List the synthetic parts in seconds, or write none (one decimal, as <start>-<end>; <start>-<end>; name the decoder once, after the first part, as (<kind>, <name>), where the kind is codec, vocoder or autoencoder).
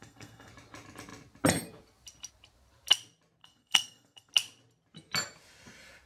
0.0-0.5 (codec, SNAC); 3.4-4.3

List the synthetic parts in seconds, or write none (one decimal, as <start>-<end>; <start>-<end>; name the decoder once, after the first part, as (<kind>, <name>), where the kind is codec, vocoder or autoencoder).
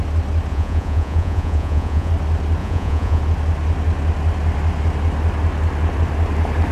0.5-2.1 (vocoder, Vocos); 2.6-3.2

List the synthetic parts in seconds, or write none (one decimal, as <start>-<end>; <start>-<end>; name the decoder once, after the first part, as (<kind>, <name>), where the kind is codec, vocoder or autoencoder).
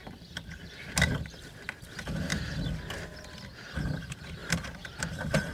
0.0-2.3 (vocoder, BigVGAN v2); 3.8-4.4; 5.0-5.5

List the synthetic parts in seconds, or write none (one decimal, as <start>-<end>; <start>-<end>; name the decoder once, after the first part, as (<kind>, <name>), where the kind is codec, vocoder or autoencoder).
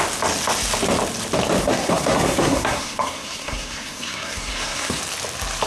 1.6-5.0 (codec, SNAC)